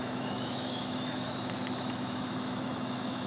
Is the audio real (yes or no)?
no